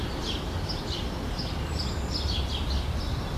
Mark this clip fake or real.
real